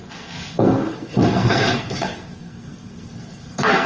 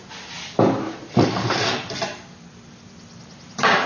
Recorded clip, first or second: second